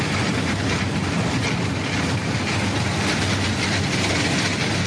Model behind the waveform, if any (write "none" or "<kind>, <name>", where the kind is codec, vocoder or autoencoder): none